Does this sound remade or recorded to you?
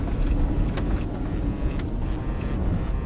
recorded